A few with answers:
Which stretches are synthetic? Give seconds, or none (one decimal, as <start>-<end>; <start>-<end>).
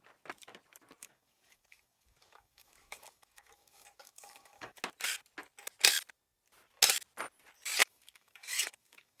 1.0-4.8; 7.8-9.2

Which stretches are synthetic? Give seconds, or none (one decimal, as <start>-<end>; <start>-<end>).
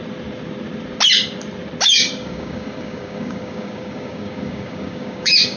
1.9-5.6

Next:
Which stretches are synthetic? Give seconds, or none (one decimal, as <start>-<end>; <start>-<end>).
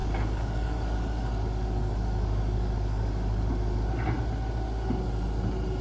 0.0-3.5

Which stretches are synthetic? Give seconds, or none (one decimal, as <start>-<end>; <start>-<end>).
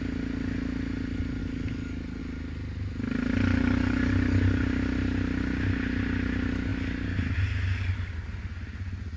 1.4-2.2; 3.5-4.6